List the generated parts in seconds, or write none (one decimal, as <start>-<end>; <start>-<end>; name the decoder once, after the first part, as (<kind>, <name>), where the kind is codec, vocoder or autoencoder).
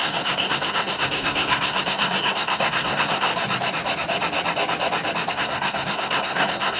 0.0-3.3 (codec, SNAC); 5.3-6.8